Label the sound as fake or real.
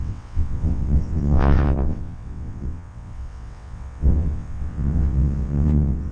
fake